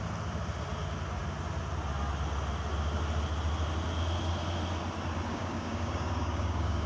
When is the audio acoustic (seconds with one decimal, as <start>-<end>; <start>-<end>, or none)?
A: 0.0-5.3